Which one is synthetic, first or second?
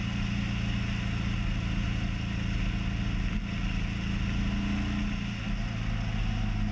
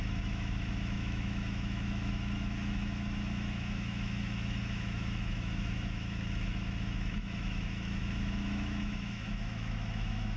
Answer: second